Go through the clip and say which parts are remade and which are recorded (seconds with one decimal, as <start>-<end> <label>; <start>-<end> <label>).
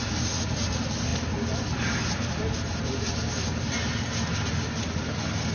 0.0-5.5 recorded